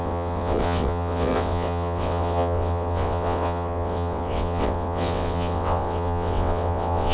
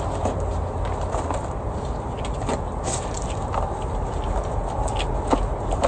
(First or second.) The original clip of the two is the second